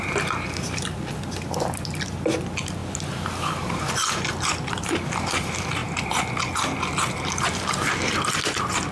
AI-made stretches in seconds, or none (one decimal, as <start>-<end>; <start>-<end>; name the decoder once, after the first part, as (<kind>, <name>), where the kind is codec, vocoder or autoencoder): none